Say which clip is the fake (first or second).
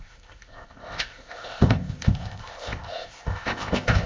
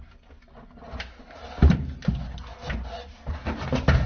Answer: first